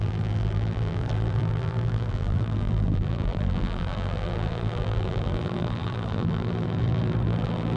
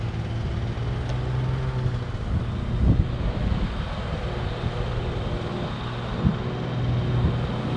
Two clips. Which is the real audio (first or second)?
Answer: second